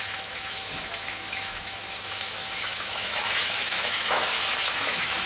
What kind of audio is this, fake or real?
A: fake